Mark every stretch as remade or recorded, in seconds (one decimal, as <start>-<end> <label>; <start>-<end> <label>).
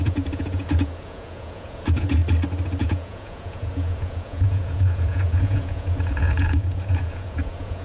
0.0-2.2 remade; 2.2-2.8 recorded; 2.8-7.8 remade